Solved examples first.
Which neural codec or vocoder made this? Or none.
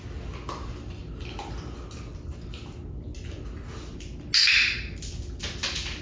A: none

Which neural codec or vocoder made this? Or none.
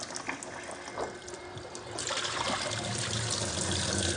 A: none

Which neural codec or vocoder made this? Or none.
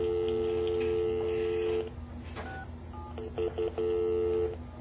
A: none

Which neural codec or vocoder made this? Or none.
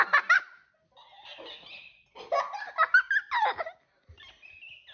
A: none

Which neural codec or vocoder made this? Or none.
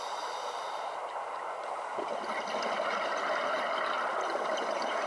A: none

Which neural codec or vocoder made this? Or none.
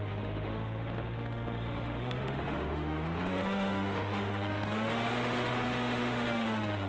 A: autoencoder, DAC-VAE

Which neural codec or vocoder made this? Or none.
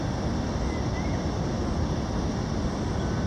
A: none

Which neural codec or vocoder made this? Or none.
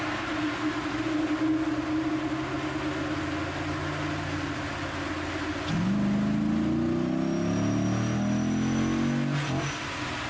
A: none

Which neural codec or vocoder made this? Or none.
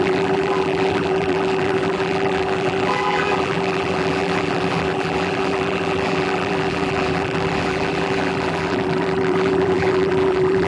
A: vocoder, BigVGAN v2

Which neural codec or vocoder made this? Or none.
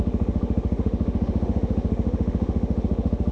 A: autoencoder, DAC-VAE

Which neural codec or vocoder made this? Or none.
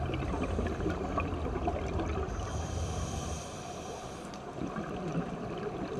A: none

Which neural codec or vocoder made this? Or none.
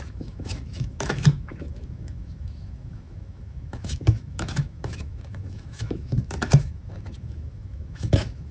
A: autoencoder, DAC-VAE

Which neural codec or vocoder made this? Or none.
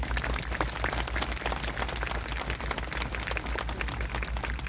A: none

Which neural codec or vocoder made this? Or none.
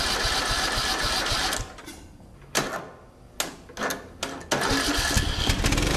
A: none